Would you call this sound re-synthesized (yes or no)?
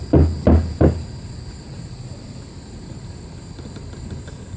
no